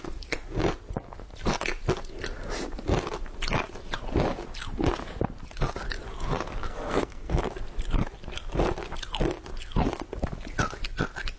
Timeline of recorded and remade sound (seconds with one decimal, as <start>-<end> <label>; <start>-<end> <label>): 0.0-6.6 recorded; 6.6-7.4 remade; 7.4-11.4 recorded